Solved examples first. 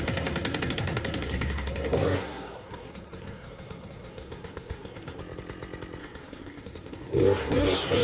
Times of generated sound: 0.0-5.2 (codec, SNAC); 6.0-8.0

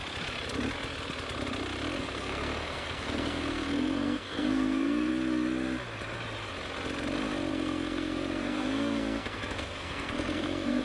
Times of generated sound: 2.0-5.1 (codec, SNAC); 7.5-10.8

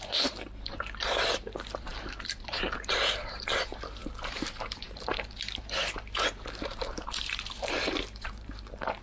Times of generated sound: 0.0-9.0 (vocoder, BigVGAN v2)

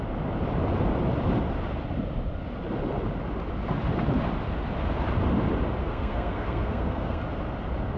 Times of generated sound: 5.8-7.2 (codec, SNAC)